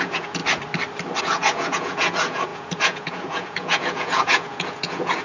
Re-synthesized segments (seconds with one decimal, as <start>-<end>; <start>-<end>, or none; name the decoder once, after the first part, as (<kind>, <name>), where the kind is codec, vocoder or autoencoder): 0.0-0.4 (vocoder, Vocos); 1.2-5.2